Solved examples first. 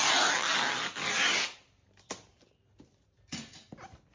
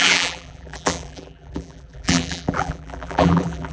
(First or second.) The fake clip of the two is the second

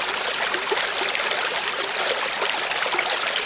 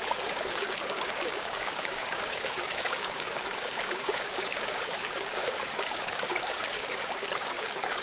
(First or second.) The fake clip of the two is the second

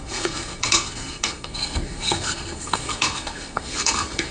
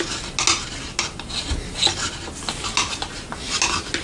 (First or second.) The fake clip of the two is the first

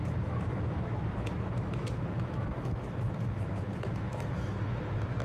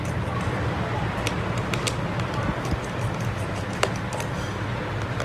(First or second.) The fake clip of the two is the first